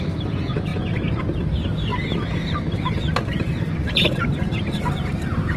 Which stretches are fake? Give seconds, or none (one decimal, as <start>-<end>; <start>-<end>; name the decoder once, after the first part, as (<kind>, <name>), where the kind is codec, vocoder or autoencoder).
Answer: 1.9-5.6 (vocoder, BigVGAN v2)